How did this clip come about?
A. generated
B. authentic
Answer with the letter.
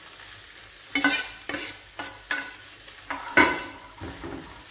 B